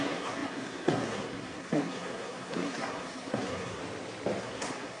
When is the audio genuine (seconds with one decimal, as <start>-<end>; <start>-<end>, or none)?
3.8-4.4